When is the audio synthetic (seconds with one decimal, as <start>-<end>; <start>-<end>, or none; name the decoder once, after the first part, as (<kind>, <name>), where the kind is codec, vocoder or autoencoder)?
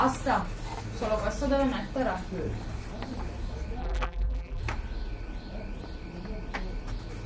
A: 3.8-4.6 (vocoder, BigVGAN v2)